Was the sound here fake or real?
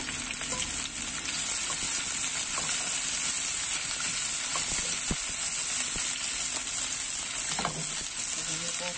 real